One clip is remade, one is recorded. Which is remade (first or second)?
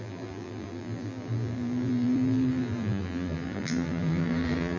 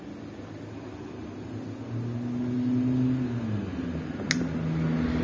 first